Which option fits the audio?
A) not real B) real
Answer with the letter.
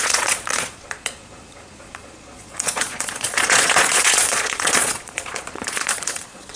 A